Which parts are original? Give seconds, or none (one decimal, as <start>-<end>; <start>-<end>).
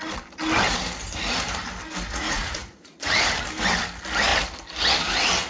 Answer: 0.0-2.1; 3.1-5.5